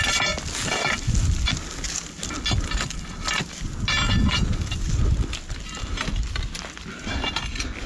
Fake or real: real